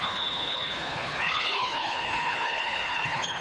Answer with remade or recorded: remade